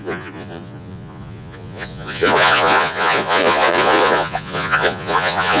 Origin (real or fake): fake